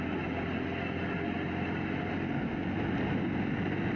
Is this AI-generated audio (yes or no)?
no